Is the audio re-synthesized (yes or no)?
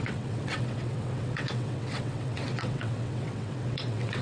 yes